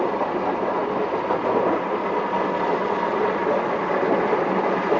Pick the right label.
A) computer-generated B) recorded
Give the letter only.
B